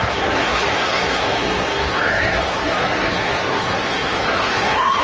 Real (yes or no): no